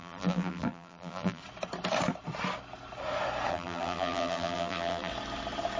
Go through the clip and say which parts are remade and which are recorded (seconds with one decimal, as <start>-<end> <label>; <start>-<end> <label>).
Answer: 0.0-1.4 remade; 1.4-3.5 recorded; 3.5-5.1 remade; 5.1-5.8 recorded